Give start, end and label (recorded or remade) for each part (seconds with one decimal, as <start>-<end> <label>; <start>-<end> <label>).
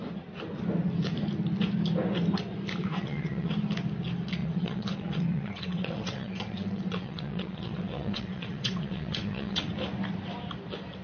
0.0-2.8 recorded; 2.8-3.5 remade; 3.5-4.4 recorded; 4.4-9.7 remade; 9.7-11.0 recorded